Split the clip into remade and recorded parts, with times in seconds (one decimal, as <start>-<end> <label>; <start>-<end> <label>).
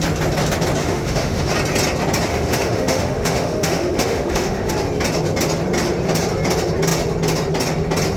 0.0-0.8 recorded; 0.8-1.5 remade; 1.5-2.3 recorded; 2.3-4.7 remade; 4.7-8.2 recorded